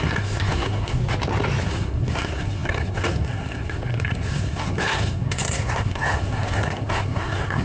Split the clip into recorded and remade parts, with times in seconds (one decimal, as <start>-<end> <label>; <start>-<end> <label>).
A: 0.0-1.0 remade; 1.0-1.6 recorded; 1.6-7.6 remade